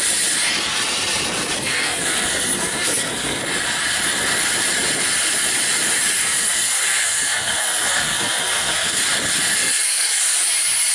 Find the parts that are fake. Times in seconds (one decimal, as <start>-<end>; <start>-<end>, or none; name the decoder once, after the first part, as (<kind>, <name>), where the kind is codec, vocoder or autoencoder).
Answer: 1.6-3.4 (codec, SNAC); 6.2-9.0; 9.5-10.2